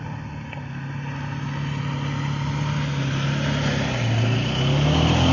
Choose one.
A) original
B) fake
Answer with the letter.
A